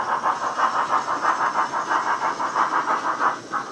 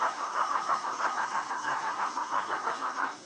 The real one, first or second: first